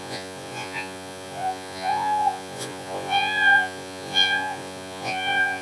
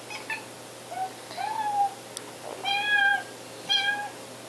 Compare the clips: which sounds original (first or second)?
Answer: second